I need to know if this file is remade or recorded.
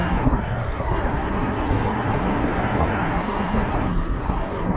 remade